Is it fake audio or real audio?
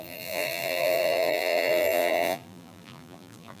fake